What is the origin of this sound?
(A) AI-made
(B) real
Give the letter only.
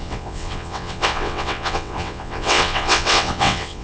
A